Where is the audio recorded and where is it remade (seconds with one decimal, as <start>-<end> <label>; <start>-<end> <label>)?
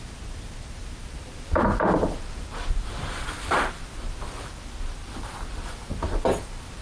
0.0-1.0 recorded; 1.0-2.8 remade; 2.8-6.8 recorded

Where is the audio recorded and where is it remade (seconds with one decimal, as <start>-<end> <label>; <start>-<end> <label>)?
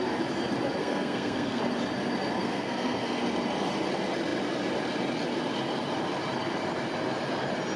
0.0-0.8 recorded; 0.8-1.6 remade; 1.6-2.4 recorded; 2.4-3.2 remade; 3.2-7.8 recorded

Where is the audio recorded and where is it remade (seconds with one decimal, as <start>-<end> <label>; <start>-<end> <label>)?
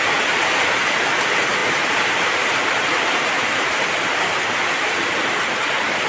0.0-1.6 recorded; 1.6-4.7 remade; 4.7-6.1 recorded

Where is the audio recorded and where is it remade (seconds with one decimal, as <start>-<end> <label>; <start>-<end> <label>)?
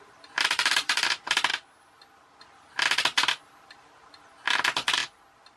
0.0-5.6 recorded